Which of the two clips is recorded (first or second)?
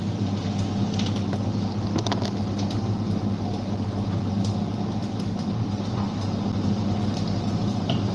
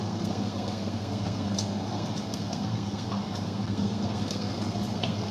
first